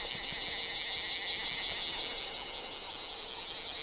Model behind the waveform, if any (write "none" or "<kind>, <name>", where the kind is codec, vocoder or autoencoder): none